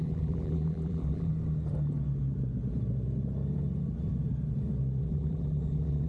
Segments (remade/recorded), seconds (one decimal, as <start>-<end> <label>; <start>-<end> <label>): 0.0-1.3 remade; 1.3-5.0 recorded; 5.0-6.1 remade